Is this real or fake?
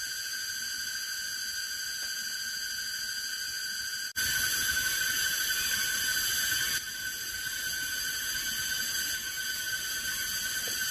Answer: real